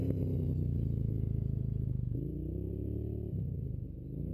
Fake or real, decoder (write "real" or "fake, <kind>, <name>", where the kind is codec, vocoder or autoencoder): fake, vocoder, BigVGAN v2